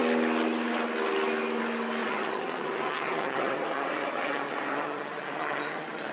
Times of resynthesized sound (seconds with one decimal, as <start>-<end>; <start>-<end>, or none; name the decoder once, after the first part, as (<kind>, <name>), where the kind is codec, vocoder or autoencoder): 2.0-6.1 (vocoder, Vocos)